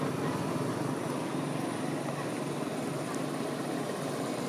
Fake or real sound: real